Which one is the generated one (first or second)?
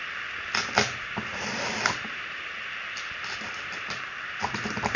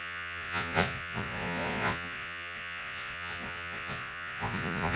second